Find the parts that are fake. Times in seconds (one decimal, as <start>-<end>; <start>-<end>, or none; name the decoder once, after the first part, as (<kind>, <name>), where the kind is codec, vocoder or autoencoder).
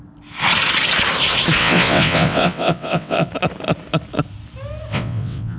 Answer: 1.6-3.3 (vocoder, WaveNeXt); 4.9-5.6